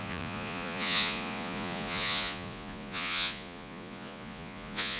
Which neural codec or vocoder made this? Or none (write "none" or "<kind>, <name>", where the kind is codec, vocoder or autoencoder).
vocoder, Vocos